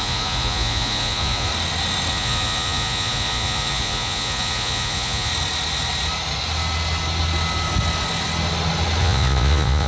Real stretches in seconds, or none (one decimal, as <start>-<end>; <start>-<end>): 1.5-2.1; 5.3-9.0